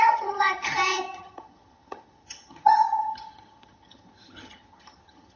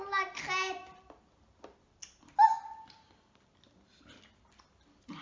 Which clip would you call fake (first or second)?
first